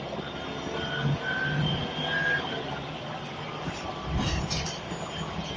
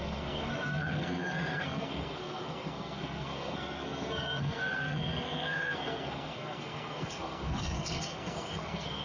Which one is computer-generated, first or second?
second